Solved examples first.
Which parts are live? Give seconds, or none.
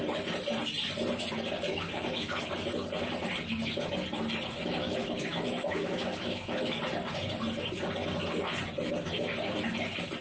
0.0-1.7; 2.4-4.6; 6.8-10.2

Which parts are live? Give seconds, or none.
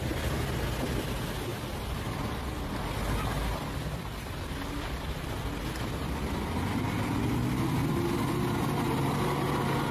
0.0-9.9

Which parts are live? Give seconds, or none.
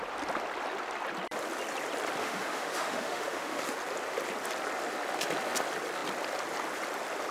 0.0-2.2; 3.6-7.3